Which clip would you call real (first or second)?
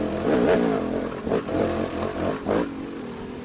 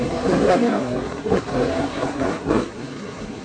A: first